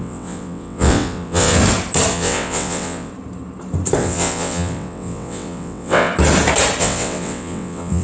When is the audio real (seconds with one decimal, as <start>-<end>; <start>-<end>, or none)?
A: 1.6-2.1; 3.1-4.0; 6.1-6.8